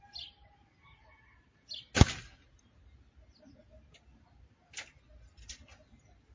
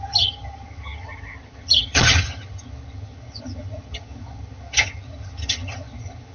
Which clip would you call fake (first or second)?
second